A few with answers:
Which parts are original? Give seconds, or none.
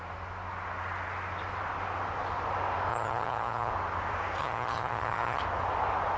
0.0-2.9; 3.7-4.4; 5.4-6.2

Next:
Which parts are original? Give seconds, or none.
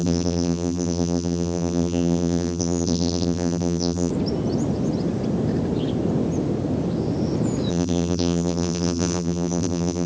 4.1-7.7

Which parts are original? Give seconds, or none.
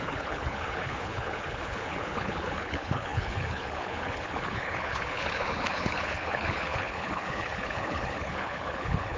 none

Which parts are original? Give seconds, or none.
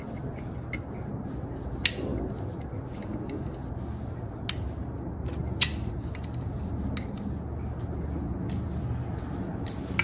0.0-10.0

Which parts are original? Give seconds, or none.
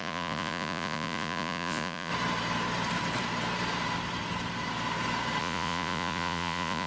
2.1-5.4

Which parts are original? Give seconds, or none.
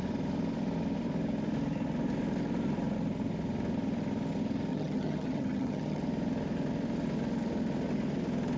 0.0-4.7; 6.0-8.6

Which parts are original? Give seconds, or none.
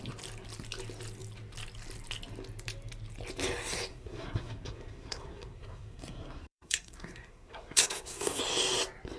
0.0-3.9; 8.4-9.2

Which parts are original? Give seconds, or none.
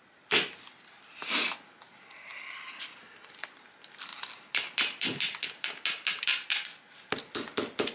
0.0-7.9